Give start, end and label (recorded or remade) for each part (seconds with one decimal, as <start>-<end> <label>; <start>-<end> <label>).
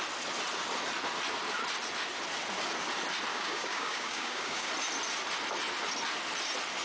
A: 0.0-3.3 recorded; 3.3-4.7 remade; 4.7-6.8 recorded